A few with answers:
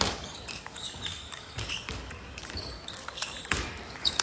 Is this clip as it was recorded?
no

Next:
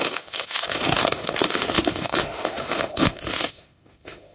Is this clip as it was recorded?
no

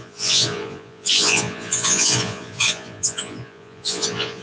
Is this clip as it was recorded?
no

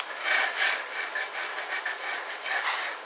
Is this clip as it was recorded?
yes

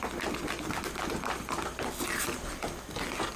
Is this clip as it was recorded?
yes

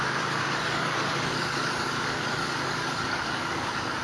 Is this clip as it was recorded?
no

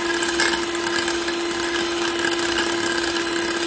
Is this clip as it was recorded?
yes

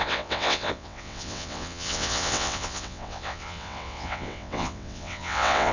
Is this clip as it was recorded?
no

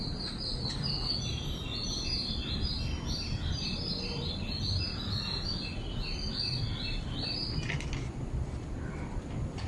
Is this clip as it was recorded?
yes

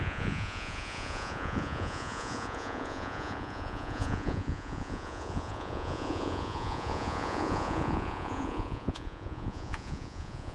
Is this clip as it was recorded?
no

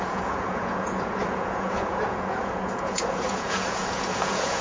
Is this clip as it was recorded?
no